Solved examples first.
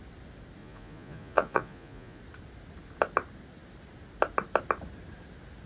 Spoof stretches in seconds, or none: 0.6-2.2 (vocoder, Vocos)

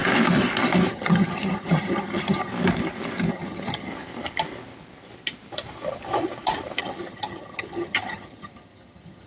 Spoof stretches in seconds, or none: 0.9-2.5 (vocoder, HiFi-GAN); 3.3-3.9; 6.8-9.3